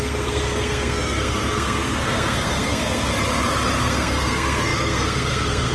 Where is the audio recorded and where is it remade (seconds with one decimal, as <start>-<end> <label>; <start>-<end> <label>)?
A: 0.0-3.1 remade; 3.1-3.8 recorded; 3.8-5.7 remade

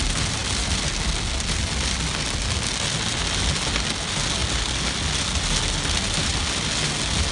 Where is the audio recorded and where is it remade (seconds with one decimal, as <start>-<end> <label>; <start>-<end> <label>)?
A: 0.0-7.3 recorded

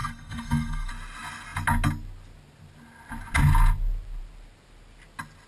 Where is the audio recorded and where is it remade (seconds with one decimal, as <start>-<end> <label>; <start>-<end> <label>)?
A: 0.0-0.9 remade; 0.9-5.5 recorded

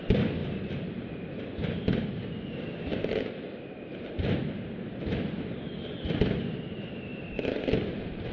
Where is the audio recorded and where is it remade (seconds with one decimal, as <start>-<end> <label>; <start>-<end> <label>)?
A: 0.0-8.3 recorded

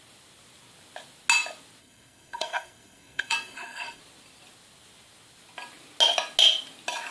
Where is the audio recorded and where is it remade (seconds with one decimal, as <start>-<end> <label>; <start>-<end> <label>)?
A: 0.0-1.8 recorded; 1.8-4.0 remade; 4.0-7.1 recorded